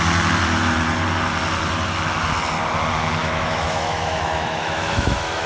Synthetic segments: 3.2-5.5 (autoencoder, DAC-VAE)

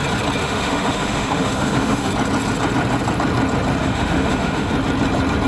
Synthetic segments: 0.4-2.1 (autoencoder, DAC-VAE); 3.8-4.7

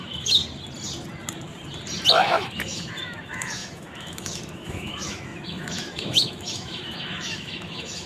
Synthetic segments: 0.0-0.4 (autoencoder, DAC-VAE); 2.1-8.1

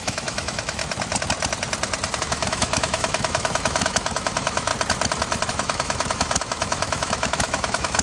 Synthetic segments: 0.0-0.8 (autoencoder, DAC-VAE); 2.2-4.7; 5.5-8.0

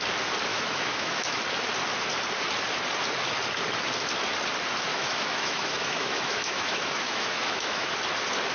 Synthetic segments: 0.5-1.4 (autoencoder, DAC-VAE); 4.9-7.9

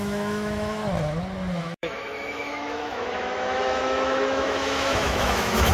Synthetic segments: 0.0-0.8 (autoencoder, DAC-VAE); 1.6-5.7

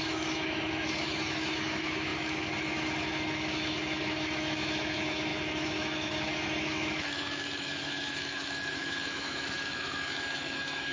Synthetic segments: 0.0-10.9 (autoencoder, DAC-VAE)